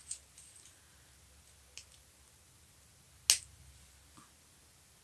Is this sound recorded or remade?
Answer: recorded